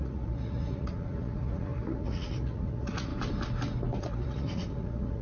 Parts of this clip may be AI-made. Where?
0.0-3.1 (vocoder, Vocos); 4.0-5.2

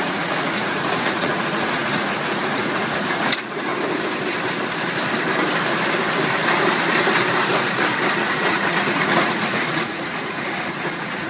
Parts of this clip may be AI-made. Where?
0.0-3.7 (vocoder, Vocos); 8.1-11.3